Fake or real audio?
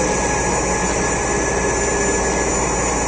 real